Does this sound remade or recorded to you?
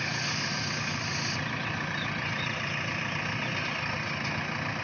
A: recorded